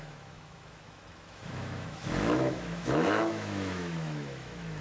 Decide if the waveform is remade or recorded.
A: remade